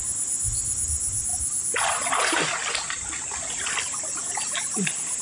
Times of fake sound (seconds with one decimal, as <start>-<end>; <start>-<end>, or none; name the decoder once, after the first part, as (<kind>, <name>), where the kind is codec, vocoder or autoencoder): none